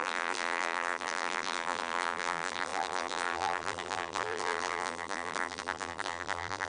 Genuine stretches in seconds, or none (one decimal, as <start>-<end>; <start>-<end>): none